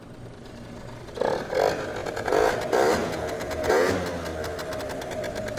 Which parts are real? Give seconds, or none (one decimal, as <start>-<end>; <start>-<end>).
0.0-2.0; 2.6-3.0; 3.9-5.6